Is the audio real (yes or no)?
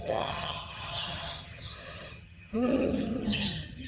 no